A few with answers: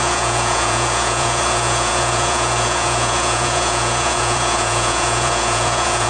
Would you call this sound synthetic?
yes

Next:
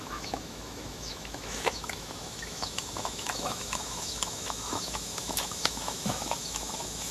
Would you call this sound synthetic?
yes